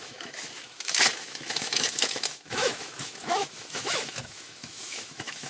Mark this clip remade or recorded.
remade